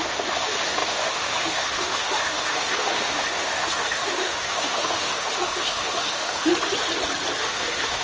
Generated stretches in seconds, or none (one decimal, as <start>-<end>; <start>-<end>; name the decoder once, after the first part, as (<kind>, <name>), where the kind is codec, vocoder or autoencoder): 0.0-6.5 (autoencoder, DAC-VAE); 7.4-8.0